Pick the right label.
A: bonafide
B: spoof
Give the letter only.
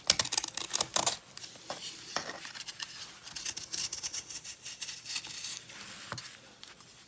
A